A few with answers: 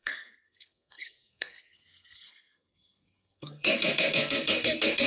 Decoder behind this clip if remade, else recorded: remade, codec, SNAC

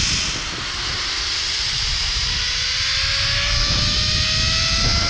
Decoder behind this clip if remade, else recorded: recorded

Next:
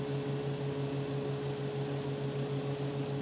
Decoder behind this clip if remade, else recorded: recorded